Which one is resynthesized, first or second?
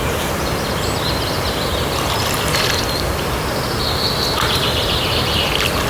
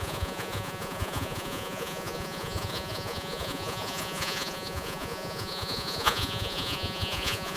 second